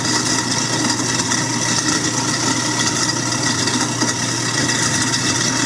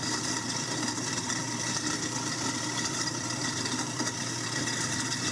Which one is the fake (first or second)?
second